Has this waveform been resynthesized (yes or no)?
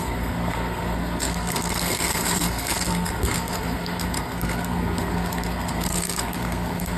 yes